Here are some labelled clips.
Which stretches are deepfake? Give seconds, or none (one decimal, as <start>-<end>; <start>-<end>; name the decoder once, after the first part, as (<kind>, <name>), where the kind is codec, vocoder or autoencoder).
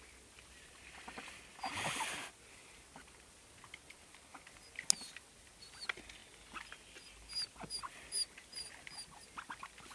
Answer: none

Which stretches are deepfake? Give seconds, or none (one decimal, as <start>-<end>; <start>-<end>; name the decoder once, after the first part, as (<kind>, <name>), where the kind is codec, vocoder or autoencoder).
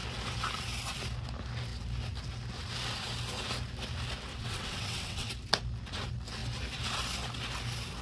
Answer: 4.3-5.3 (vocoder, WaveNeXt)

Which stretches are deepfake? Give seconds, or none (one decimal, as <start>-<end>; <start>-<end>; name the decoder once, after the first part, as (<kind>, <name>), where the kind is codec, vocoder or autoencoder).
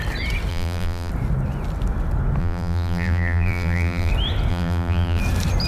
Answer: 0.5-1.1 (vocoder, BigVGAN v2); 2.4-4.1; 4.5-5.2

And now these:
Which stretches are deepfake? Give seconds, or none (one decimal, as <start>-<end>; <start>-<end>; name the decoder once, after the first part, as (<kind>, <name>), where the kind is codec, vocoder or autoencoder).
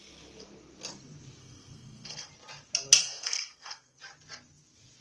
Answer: 1.4-2.3 (codec, SNAC); 3.0-4.0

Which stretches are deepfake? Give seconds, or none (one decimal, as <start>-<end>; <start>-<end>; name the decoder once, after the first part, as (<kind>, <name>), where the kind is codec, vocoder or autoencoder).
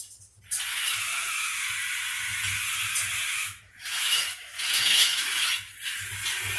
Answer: 0.7-1.7 (autoencoder, DAC-VAE); 3.3-5.5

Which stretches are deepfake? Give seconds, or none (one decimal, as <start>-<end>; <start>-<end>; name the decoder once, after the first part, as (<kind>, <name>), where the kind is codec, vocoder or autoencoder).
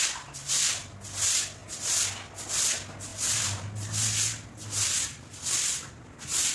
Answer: none